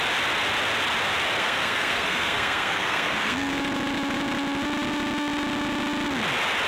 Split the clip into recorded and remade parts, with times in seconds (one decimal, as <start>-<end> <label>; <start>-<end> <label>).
0.0-1.4 recorded; 1.4-3.5 remade; 3.5-6.7 recorded